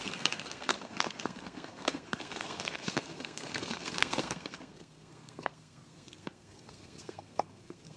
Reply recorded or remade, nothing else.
remade